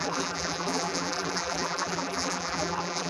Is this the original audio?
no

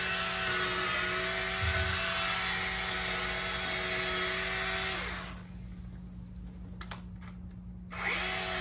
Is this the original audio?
yes